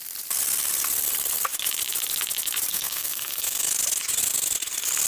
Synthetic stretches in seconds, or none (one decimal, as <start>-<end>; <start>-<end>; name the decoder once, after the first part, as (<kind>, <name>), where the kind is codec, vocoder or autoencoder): 2.7-3.7 (codec, SNAC)